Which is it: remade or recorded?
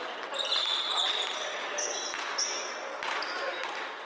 recorded